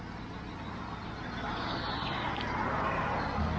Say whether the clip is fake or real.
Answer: real